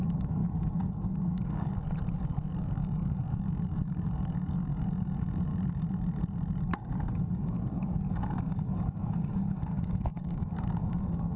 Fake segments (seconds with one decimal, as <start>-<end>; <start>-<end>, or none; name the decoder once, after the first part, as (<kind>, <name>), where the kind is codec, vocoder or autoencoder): 0.0-0.4 (codec, DAC); 0.9-1.7; 2.6-5.5; 7.1-11.4